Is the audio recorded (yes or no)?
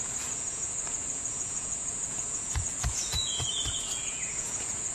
no